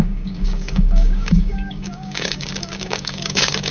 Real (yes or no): no